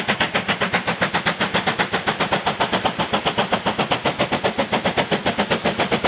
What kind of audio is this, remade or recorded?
recorded